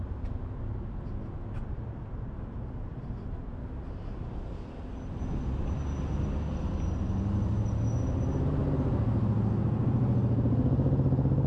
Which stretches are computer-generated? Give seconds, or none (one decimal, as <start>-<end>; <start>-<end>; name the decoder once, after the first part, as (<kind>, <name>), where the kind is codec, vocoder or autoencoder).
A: none